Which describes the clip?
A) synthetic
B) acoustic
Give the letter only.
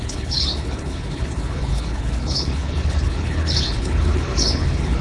A